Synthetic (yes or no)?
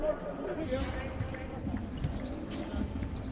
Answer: yes